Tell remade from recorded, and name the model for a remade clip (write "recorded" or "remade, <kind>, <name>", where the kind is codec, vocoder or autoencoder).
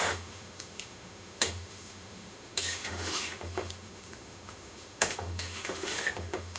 remade, autoencoder, DAC-VAE